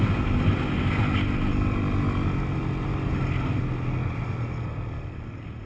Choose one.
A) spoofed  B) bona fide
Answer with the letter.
B